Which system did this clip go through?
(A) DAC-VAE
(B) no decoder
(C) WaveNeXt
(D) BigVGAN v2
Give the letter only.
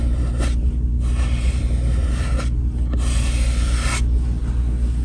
B